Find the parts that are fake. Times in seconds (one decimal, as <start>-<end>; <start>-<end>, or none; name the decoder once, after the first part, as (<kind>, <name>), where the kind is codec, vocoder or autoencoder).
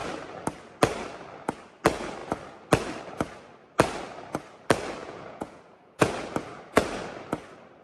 5.0-6.1 (vocoder, Vocos)